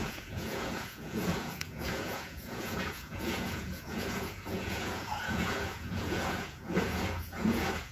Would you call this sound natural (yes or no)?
no